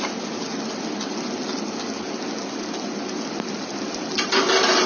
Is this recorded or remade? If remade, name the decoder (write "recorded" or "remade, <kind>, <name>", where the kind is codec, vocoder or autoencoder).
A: recorded